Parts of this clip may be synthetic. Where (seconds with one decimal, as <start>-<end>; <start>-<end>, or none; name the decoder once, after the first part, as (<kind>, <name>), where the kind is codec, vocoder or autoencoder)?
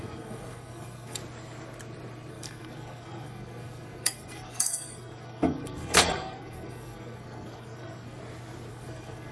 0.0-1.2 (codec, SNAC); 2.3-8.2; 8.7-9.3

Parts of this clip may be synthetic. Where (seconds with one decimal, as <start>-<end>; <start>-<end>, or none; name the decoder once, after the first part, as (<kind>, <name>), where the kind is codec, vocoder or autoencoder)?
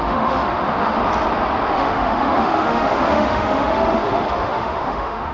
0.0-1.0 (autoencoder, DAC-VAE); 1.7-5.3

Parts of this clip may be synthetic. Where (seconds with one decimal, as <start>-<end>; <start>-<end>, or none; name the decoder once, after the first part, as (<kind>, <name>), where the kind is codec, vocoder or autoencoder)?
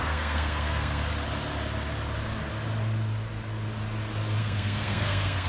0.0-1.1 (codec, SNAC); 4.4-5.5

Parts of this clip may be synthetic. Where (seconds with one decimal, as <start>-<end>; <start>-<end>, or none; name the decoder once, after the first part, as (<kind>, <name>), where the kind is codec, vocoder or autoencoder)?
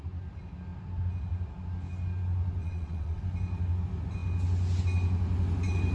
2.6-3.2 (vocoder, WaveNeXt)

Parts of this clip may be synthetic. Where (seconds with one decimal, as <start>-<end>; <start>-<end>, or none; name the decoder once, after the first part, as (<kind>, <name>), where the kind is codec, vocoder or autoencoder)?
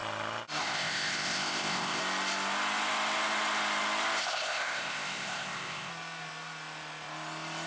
0.6-2.0 (codec, ZipCodec); 4.2-5.9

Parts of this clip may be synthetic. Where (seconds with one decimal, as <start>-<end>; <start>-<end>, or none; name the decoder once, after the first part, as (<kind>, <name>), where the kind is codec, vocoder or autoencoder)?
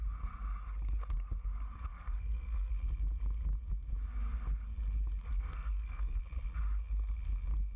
1.9-2.7 (codec, SNAC); 5.3-6.2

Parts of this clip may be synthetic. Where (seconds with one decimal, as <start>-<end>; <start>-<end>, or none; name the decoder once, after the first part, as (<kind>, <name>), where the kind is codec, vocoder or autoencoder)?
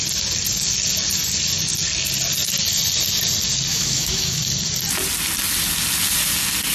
3.7-4.4 (autoencoder, DAC-VAE)